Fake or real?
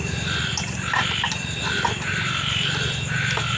real